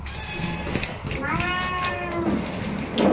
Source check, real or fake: real